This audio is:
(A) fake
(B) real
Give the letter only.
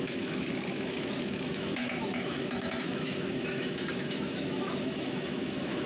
A